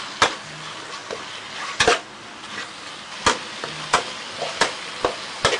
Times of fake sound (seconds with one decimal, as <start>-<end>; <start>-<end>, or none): none